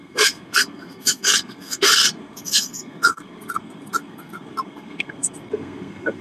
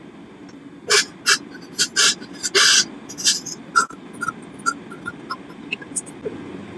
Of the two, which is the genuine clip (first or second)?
second